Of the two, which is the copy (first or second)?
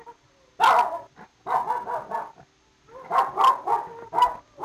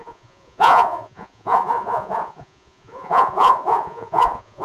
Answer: second